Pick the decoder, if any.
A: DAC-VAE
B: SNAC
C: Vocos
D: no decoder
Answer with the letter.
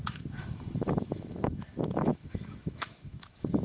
A